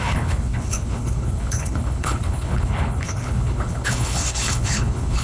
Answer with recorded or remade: remade